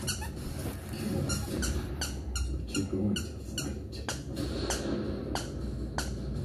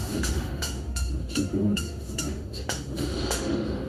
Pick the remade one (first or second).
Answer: second